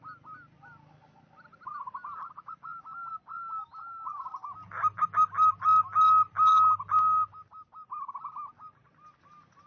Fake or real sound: real